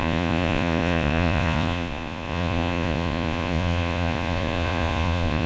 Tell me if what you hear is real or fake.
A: fake